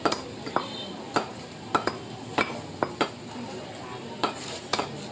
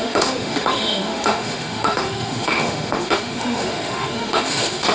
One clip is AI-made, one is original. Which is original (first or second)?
first